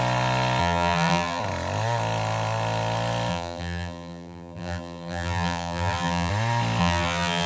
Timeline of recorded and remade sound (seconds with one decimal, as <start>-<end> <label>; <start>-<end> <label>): 0.0-0.6 recorded; 0.6-1.4 remade; 1.4-3.3 recorded; 3.3-6.3 remade; 6.3-6.8 recorded; 6.8-7.5 remade